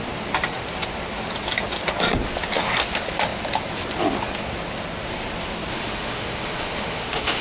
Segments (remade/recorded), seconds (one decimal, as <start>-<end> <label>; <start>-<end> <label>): 0.0-5.7 recorded; 5.7-7.4 remade